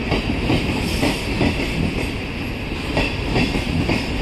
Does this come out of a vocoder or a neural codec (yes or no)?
no